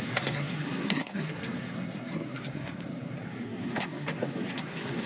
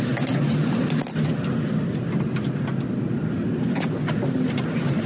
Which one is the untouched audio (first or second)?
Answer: second